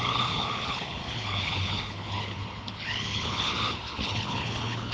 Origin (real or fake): fake